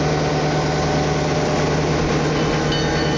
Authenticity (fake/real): real